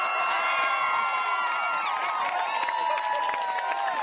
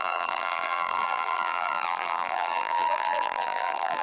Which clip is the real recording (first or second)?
first